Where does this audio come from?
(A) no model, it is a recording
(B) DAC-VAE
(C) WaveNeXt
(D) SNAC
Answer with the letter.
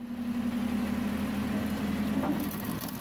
A